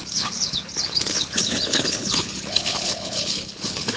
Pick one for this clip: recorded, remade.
remade